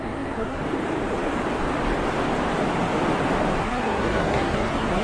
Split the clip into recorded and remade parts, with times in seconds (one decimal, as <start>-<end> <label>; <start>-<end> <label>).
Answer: 0.0-0.6 remade; 0.6-3.6 recorded; 3.6-5.0 remade